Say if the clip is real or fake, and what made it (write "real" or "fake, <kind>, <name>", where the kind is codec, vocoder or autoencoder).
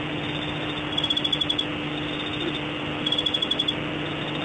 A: real